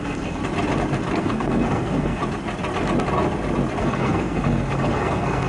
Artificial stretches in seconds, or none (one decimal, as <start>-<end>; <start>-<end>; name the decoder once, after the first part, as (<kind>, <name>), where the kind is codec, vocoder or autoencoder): 0.0-0.4 (codec, SNAC); 1.2-2.2; 3.8-5.5